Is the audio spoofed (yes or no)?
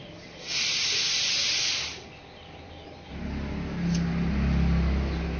no